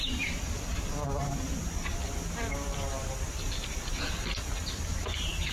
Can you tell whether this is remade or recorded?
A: recorded